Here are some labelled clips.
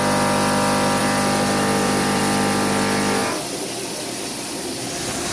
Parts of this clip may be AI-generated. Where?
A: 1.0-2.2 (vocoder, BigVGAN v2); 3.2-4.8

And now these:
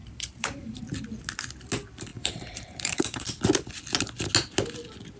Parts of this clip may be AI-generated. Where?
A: 0.0-0.8 (vocoder, BigVGAN v2); 2.1-3.4

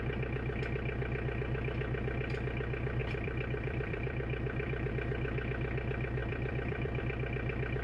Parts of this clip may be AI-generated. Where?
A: 3.0-4.9 (vocoder, BigVGAN v2); 6.2-7.0

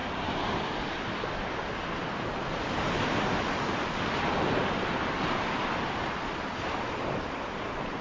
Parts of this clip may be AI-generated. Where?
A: none

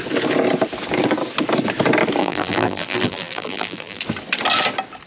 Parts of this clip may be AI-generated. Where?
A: 2.2-4.0 (vocoder, BigVGAN v2)

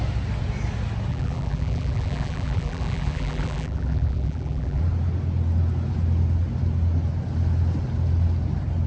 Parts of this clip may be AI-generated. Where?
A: 1.1-4.8 (vocoder, BigVGAN v2)